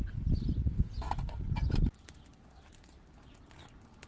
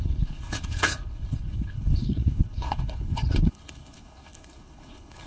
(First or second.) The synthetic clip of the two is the second